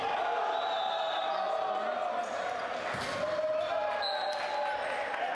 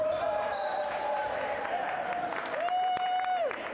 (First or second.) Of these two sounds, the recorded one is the first